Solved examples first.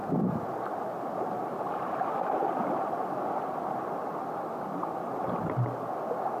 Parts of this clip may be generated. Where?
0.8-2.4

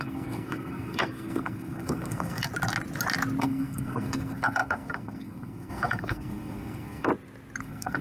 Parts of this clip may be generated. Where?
0.0-2.5; 3.4-7.1; 7.6-8.0

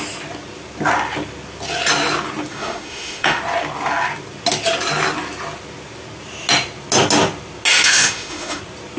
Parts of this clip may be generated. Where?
2.5-3.4; 7.7-8.6